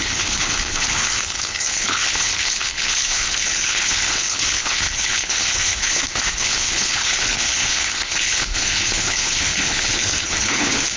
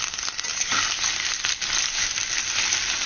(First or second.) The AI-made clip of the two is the first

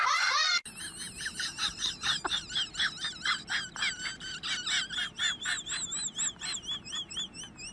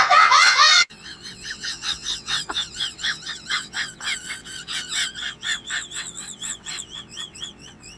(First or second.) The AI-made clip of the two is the second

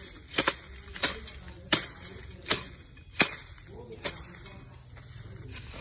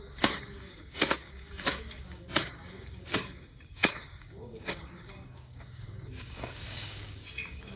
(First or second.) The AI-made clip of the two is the second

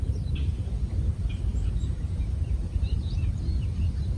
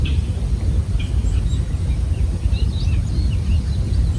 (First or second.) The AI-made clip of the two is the first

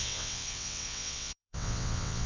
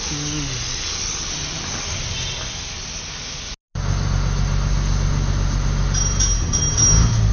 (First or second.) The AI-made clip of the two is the first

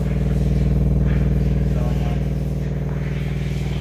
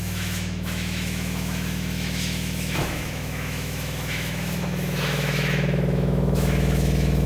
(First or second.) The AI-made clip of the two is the second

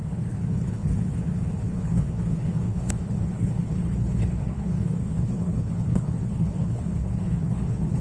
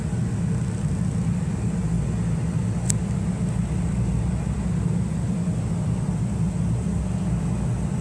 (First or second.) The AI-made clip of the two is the first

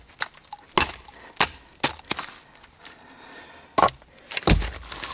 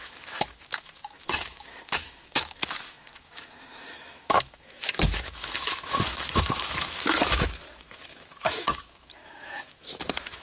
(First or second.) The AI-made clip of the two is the second